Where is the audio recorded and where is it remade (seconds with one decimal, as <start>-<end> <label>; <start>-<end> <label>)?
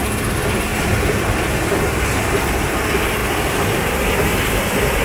0.0-0.7 recorded; 0.7-2.4 remade; 2.4-3.2 recorded; 3.2-3.9 remade; 3.9-5.0 recorded